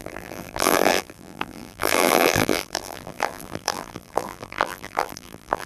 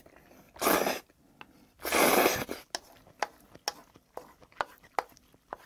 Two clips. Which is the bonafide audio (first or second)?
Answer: second